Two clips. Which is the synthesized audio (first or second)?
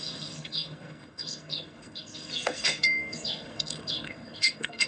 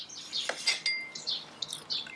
first